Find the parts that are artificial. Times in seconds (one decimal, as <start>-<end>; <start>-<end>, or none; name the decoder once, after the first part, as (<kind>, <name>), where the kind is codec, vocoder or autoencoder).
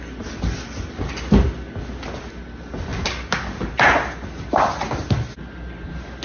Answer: none